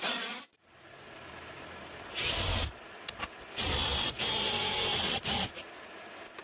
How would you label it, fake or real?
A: real